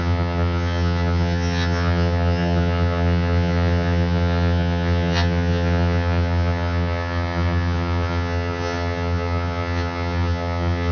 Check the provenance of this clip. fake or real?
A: fake